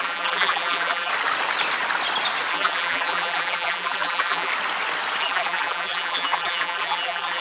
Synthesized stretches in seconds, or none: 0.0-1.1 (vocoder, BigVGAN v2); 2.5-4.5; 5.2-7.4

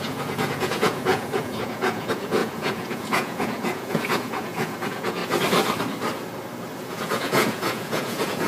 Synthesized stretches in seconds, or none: 0.0-5.2 (vocoder, Vocos); 6.9-8.5

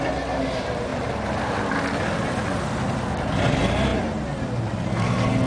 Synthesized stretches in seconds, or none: none

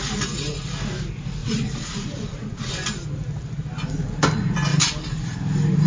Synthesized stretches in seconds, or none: 1.4-2.7 (vocoder, Vocos)

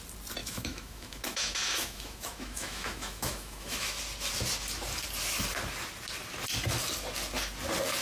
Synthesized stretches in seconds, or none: 0.4-4.0 (autoencoder, DAC-VAE)

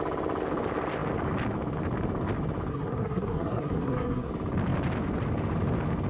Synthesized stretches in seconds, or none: 2.7-4.3 (codec, SNAC)

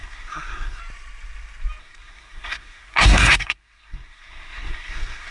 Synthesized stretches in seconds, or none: 0.0-0.8 (codec, SNAC); 1.8-5.3